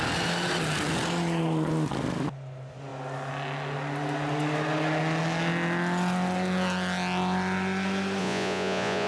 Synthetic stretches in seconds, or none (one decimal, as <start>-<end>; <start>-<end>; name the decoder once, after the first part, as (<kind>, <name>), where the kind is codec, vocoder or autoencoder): 8.2-9.1 (vocoder, Vocos)